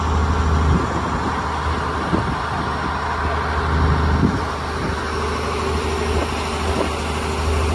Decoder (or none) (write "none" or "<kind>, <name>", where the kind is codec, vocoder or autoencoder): none